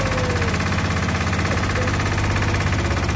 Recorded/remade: recorded